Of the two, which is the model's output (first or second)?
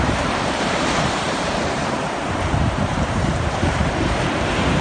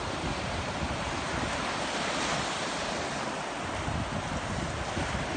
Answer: first